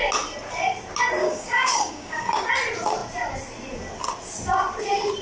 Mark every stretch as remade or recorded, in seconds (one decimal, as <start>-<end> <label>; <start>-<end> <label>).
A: 0.0-1.2 recorded; 1.2-2.5 remade; 2.5-5.2 recorded